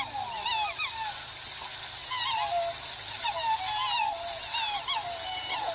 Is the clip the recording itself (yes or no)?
yes